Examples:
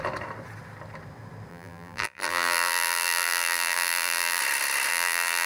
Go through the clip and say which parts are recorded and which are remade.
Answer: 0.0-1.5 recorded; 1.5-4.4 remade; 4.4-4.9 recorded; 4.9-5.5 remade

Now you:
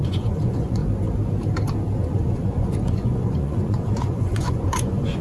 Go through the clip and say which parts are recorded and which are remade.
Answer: 0.0-0.8 remade; 0.8-2.0 recorded; 2.0-5.2 remade